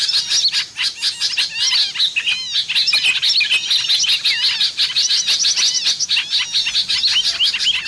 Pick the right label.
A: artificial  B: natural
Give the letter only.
B